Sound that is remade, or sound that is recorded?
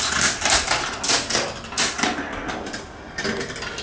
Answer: recorded